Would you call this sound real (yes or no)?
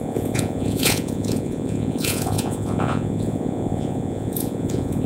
no